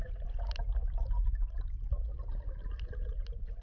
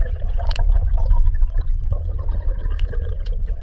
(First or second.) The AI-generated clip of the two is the second